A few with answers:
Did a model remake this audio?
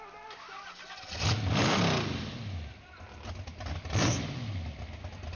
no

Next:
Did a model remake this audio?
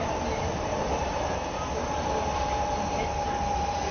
no